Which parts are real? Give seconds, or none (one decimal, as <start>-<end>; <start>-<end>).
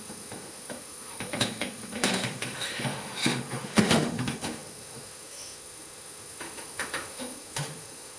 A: none